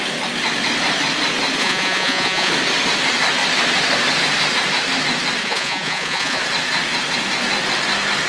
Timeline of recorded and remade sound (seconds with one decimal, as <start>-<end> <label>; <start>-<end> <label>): 0.0-1.6 recorded; 1.6-2.5 remade; 2.5-5.4 recorded; 5.4-6.4 remade; 6.4-8.3 recorded